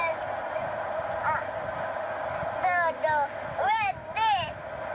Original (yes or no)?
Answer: yes